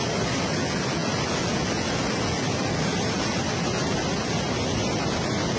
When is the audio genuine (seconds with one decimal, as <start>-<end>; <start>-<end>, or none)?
0.0-5.6

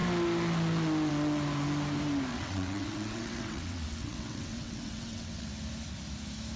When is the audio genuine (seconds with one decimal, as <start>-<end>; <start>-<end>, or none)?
0.0-2.3; 5.5-6.6

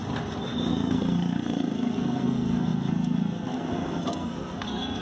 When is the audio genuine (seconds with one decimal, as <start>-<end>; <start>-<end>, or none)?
0.0-0.7